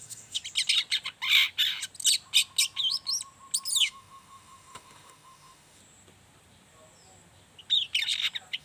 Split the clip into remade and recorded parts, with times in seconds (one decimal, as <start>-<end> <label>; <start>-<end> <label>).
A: 0.0-0.4 remade; 0.4-3.8 recorded; 3.8-5.8 remade; 5.8-8.6 recorded